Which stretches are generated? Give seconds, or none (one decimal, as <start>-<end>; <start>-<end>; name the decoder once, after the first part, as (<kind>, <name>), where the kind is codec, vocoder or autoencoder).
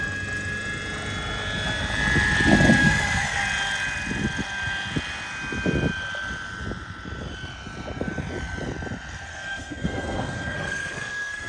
2.8-3.4 (codec, SNAC); 9.3-11.5